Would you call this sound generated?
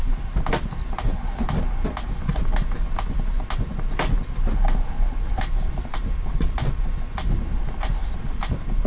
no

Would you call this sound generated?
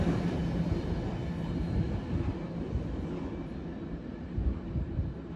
no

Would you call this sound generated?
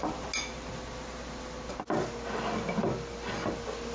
no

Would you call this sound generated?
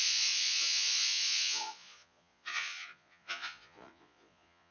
yes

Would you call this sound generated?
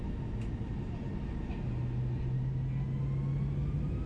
no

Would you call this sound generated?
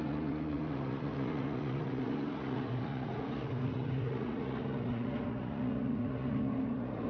yes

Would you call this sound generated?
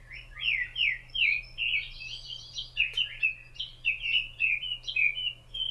yes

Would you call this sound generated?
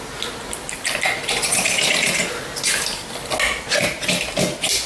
no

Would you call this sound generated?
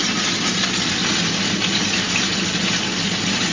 no